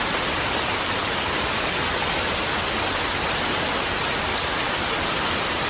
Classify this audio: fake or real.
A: real